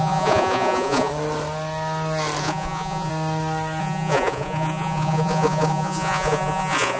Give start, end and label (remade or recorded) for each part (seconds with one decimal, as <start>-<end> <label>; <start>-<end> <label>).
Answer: 0.0-1.1 remade; 1.1-2.4 recorded; 2.4-3.1 remade; 3.1-3.8 recorded; 3.8-7.0 remade